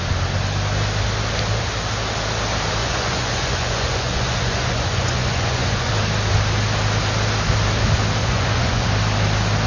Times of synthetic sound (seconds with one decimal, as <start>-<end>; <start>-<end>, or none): 2.8-5.9; 8.2-8.9

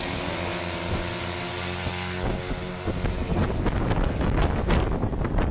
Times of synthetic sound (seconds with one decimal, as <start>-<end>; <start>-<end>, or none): none

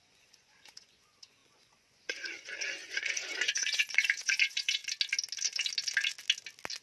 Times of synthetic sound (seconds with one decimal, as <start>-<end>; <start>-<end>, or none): 0.0-4.8

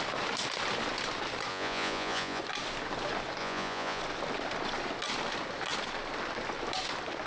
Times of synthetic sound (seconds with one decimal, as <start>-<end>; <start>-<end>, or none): 1.5-2.4; 3.4-4.0